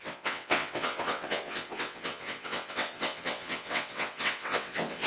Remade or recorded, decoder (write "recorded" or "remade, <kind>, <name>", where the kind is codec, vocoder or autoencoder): remade, vocoder, WaveNeXt